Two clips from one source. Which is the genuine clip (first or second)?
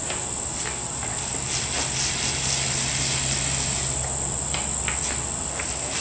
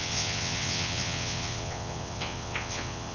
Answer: first